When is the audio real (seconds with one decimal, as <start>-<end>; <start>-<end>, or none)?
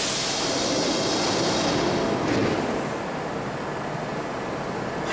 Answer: 0.0-5.1